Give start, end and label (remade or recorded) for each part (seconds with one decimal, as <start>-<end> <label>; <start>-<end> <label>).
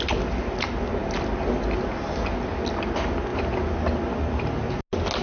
0.0-5.2 recorded